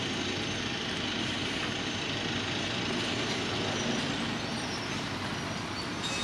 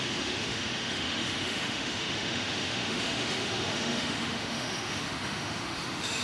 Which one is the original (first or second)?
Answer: first